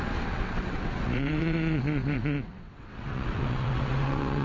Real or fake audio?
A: fake